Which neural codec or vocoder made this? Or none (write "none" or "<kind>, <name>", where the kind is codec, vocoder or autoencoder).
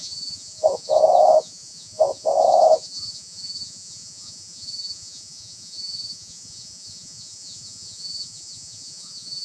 vocoder, Vocos